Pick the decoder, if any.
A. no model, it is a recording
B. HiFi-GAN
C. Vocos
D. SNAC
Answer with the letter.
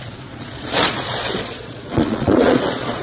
C